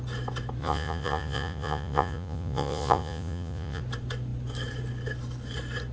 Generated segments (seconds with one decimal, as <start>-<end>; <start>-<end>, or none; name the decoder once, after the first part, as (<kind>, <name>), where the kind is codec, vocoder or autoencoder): 0.6-3.8 (vocoder, Vocos)